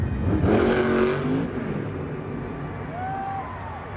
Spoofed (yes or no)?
no